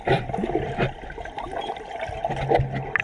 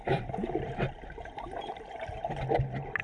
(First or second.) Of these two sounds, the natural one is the first